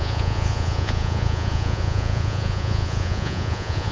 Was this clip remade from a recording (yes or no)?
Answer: yes